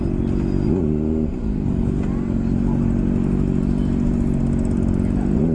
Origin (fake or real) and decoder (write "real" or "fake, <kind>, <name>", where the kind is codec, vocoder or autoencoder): real